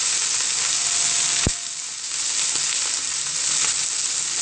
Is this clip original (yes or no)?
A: yes